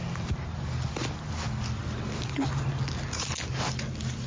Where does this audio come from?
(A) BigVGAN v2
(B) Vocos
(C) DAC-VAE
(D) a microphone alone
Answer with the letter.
D